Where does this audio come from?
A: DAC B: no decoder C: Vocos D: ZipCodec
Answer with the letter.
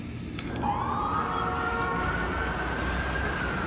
B